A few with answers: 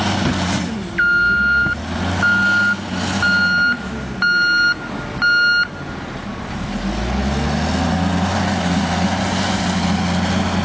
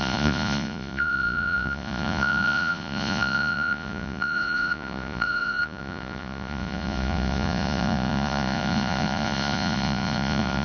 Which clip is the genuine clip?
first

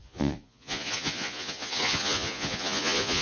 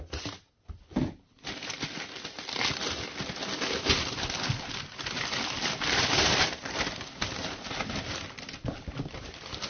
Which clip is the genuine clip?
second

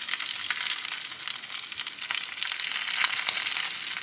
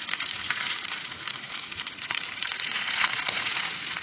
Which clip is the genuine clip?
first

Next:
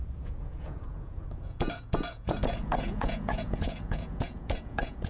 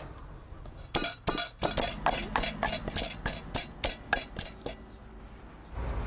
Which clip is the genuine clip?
second